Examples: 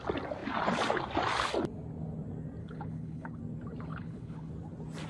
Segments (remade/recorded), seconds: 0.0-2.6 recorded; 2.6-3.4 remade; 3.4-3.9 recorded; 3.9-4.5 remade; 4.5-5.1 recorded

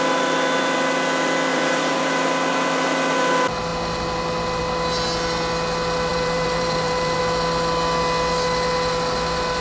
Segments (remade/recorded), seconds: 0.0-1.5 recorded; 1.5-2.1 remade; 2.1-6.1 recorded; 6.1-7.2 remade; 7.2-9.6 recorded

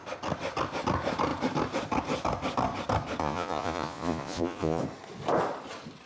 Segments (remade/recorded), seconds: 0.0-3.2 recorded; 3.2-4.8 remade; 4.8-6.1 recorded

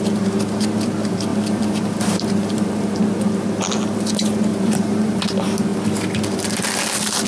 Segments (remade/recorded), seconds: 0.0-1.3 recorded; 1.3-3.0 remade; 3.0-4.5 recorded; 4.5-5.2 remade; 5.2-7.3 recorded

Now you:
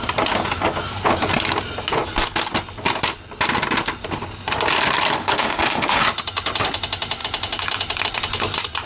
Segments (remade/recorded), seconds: 0.0-5.2 recorded; 5.2-6.0 remade; 6.0-8.9 recorded

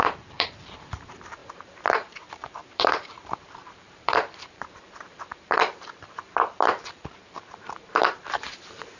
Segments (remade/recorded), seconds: 0.0-9.0 remade